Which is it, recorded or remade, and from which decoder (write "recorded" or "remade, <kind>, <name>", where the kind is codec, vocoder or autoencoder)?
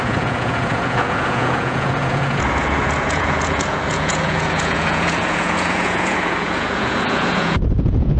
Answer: remade, vocoder, Vocos